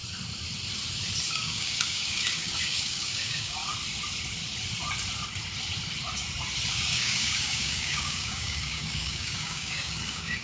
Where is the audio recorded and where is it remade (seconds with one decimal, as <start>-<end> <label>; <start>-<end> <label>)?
0.0-1.3 recorded; 1.3-3.6 remade; 3.6-6.7 recorded; 6.7-10.4 remade